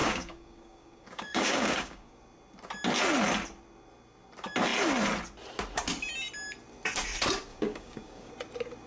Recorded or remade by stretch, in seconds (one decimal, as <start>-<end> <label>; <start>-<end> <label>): 0.0-2.2 remade; 2.2-7.5 recorded; 7.5-8.3 remade; 8.3-8.9 recorded